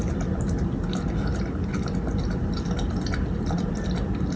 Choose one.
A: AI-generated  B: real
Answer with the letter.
B